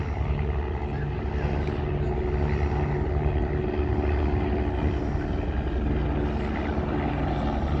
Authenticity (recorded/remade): recorded